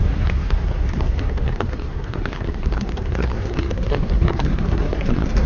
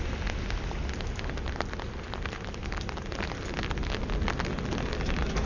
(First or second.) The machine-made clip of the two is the first